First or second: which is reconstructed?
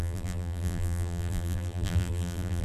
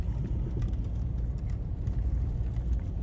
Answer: first